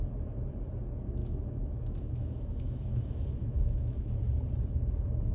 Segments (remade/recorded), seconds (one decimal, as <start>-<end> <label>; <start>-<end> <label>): 0.0-1.2 recorded; 1.2-4.2 remade; 4.2-5.3 recorded